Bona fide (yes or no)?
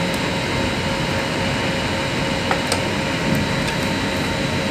yes